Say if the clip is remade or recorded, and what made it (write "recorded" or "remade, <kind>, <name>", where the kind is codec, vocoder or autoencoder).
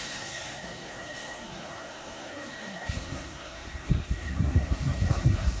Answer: remade, codec, SNAC